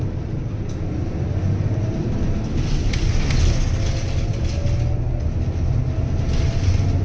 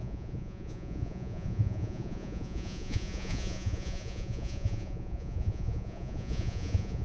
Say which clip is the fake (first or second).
second